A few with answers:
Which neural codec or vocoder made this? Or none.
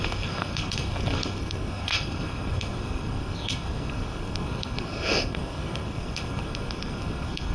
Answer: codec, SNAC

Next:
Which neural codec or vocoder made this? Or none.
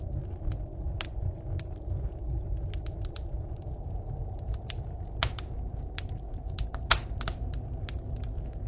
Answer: none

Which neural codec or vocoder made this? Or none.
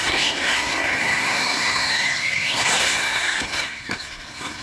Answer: codec, SNAC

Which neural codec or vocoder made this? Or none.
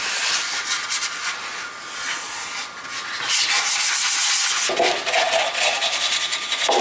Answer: none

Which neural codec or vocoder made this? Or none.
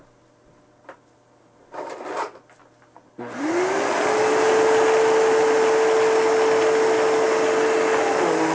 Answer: none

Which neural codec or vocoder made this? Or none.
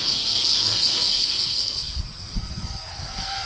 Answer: codec, SNAC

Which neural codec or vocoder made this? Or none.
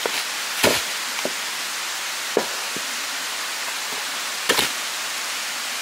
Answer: none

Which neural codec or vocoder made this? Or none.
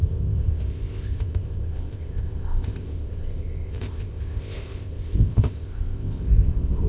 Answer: codec, ZipCodec